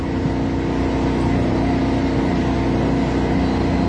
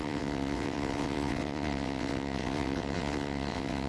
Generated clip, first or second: second